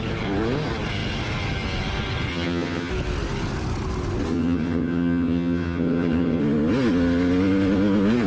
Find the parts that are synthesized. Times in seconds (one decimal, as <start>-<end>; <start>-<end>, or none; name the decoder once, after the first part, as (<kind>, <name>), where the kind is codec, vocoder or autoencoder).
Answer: 2.3-2.9 (vocoder, HiFi-GAN); 4.3-6.4